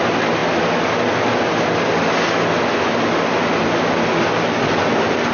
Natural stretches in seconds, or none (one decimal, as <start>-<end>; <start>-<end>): 0.0-5.3